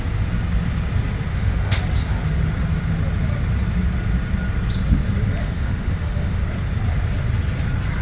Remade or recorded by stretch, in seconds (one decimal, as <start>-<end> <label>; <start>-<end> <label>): 0.0-1.3 recorded; 1.3-1.8 remade; 1.8-5.4 recorded; 5.4-6.4 remade; 6.4-8.0 recorded